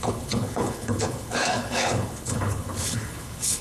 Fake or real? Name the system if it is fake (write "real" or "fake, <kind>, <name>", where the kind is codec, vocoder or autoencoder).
fake, codec, HILCodec